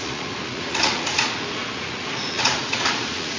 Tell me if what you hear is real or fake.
fake